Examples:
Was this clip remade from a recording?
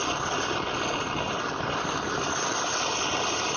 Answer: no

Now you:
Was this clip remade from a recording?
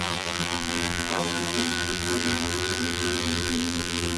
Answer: yes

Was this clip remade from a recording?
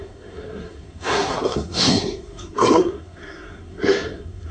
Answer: yes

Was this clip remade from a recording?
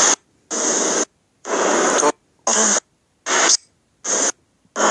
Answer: no